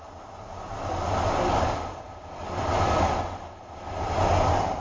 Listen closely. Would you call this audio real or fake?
real